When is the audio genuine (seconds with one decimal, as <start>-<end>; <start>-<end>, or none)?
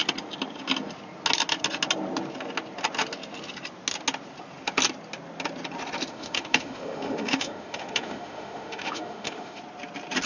0.0-6.1; 9.6-10.3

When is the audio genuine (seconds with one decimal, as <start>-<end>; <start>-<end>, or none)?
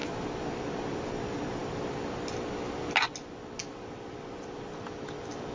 0.0-5.5